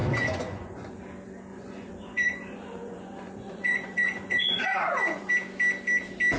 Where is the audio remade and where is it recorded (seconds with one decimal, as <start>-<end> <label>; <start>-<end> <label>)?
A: 0.0-1.0 remade; 1.0-1.5 recorded; 1.5-5.3 remade; 5.3-6.4 recorded